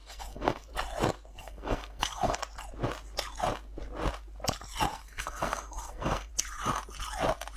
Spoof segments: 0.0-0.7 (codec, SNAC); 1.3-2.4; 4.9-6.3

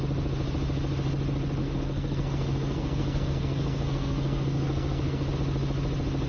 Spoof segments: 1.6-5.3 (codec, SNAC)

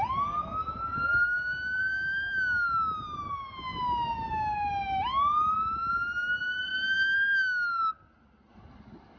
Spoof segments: none